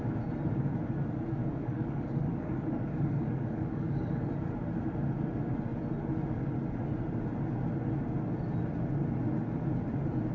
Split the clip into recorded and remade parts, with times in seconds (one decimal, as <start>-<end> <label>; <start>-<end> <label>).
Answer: 0.0-1.4 recorded; 1.4-4.2 remade; 4.2-10.3 recorded